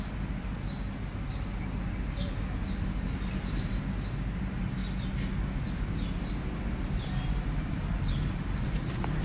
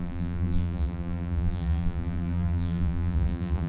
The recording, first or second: first